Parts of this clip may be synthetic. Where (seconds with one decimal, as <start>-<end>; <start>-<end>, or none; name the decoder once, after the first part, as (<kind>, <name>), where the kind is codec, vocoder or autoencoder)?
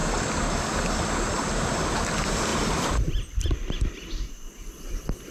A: 1.2-2.5 (vocoder, BigVGAN v2); 4.3-5.3